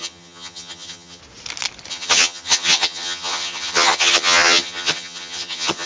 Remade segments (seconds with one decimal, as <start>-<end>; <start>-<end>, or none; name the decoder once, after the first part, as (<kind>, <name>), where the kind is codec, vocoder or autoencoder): 0.0-1.2 (vocoder, HiFi-GAN); 1.9-5.9